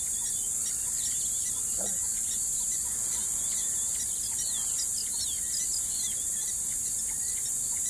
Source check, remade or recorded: recorded